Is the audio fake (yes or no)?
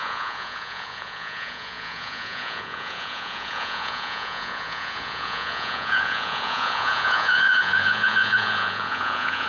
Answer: yes